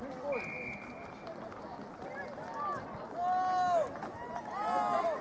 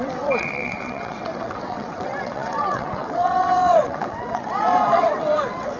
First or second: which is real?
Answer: first